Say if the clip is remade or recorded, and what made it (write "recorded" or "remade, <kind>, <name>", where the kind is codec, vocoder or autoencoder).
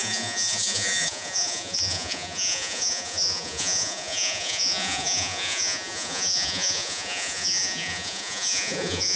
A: remade, vocoder, Vocos